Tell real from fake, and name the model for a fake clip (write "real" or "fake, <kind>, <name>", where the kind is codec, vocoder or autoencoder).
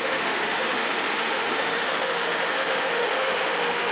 fake, autoencoder, DAC-VAE